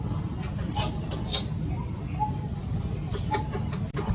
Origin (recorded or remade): recorded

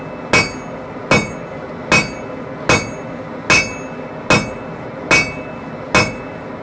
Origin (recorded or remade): recorded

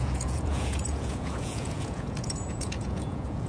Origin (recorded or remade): remade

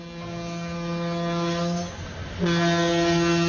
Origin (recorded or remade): recorded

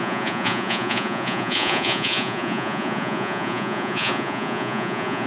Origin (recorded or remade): remade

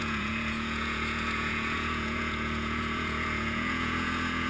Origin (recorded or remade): remade